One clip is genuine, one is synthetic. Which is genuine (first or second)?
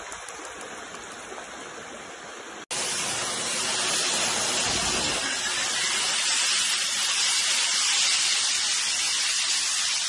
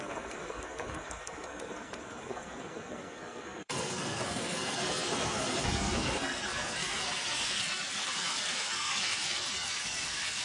first